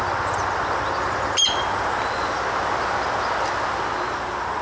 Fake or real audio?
real